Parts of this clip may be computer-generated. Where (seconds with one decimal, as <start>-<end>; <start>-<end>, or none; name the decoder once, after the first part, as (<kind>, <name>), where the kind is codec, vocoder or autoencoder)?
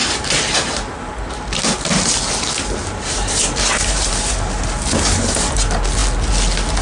0.0-1.1 (vocoder, BigVGAN v2); 2.8-4.1